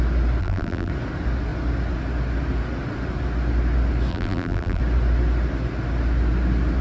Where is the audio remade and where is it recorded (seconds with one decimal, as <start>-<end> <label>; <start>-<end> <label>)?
0.0-0.4 recorded; 0.4-0.9 remade; 0.9-4.1 recorded; 4.1-4.8 remade; 4.8-6.8 recorded